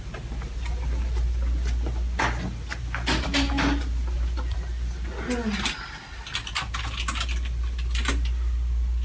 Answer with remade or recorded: recorded